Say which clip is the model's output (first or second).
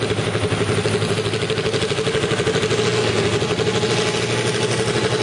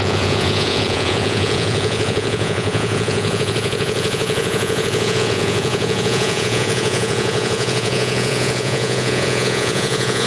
second